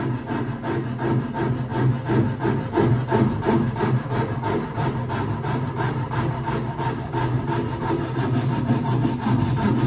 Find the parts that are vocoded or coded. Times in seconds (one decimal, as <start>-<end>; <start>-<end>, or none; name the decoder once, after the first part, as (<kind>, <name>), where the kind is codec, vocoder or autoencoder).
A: none